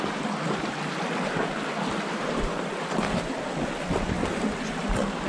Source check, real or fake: real